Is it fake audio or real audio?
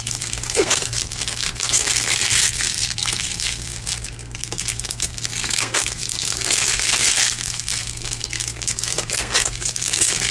fake